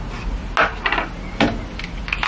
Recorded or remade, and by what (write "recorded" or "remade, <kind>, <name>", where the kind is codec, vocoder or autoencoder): recorded